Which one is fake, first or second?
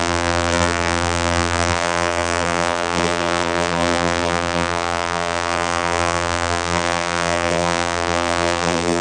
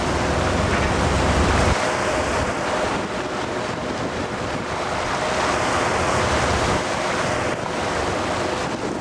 first